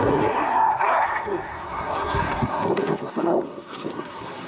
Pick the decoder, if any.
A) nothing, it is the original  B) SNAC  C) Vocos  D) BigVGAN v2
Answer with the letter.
B